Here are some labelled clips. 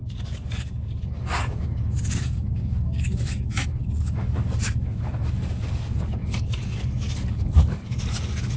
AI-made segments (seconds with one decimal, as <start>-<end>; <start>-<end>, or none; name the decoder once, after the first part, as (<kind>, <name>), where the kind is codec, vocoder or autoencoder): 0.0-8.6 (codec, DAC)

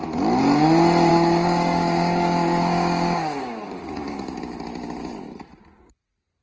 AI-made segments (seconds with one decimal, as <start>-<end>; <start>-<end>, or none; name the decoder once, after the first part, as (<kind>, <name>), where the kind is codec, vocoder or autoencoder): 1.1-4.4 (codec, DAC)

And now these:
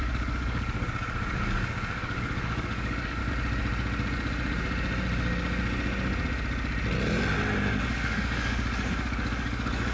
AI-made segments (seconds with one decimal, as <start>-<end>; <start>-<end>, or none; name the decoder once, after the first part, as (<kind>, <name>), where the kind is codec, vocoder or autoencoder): 0.0-3.2 (codec, DAC); 7.8-9.9

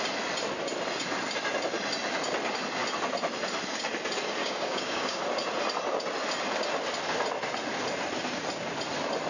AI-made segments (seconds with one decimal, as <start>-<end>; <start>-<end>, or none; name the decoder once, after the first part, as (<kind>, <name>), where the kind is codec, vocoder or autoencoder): 4.4-5.2 (codec, DAC)